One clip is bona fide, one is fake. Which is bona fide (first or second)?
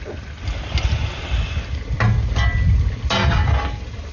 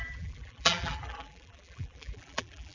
first